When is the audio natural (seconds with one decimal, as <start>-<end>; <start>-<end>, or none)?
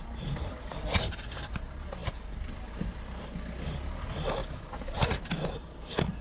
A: 0.0-4.4; 5.0-6.2